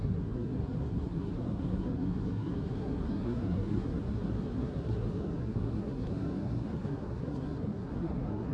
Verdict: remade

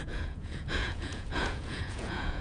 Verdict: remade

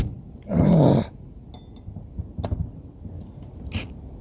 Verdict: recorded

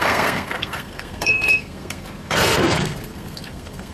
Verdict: remade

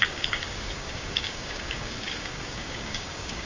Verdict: remade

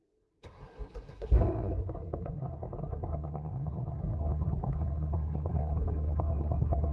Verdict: remade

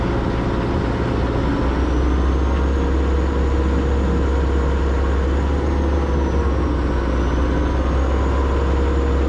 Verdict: recorded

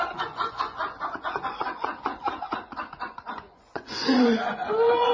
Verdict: remade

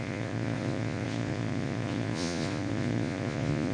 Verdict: remade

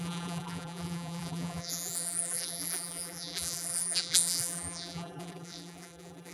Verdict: remade